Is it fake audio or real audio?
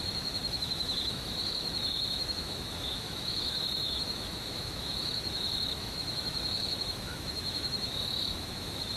fake